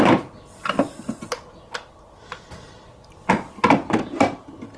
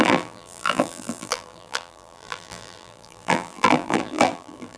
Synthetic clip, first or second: second